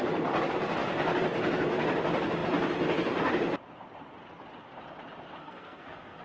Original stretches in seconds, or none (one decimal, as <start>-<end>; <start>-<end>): 0.0-5.4